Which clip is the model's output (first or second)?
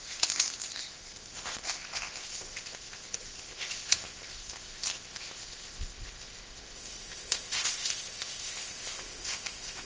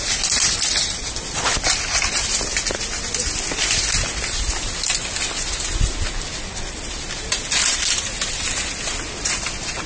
first